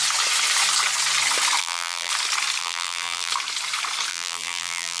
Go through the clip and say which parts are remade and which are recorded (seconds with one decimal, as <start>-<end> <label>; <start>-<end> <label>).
0.0-1.6 recorded; 1.6-2.1 remade; 2.1-2.6 recorded; 2.6-3.3 remade; 3.3-4.1 recorded; 4.1-5.0 remade